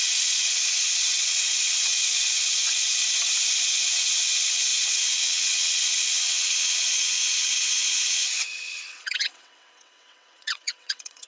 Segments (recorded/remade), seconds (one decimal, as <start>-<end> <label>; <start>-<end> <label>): 0.0-3.0 remade; 3.0-3.6 recorded; 3.6-11.3 remade